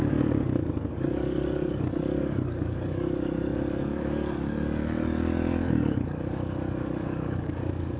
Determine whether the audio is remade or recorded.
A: remade